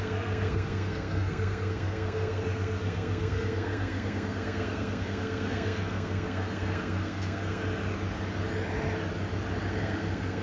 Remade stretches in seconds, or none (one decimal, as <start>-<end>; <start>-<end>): 0.0-7.6; 9.7-10.4